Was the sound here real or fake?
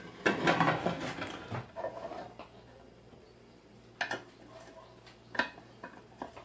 real